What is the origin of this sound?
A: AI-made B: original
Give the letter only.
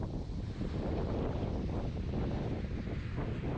B